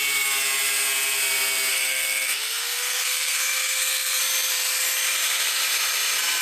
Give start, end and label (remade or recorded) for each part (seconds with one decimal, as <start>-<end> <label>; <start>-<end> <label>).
0.0-1.7 recorded; 1.7-4.2 remade; 4.2-6.4 recorded